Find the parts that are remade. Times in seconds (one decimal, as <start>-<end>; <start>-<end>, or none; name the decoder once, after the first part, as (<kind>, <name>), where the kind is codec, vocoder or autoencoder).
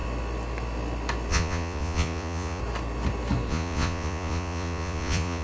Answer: 1.3-2.6 (vocoder, Vocos); 3.5-5.4